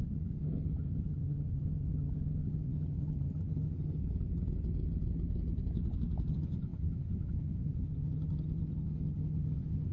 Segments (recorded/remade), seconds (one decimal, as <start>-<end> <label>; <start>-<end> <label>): 0.0-4.0 remade; 4.0-6.3 recorded; 6.3-9.9 remade